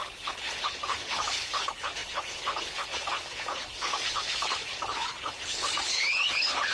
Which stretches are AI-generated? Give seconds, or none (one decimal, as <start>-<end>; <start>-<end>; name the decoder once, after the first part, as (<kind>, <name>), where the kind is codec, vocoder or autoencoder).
0.0-6.7 (codec, HILCodec)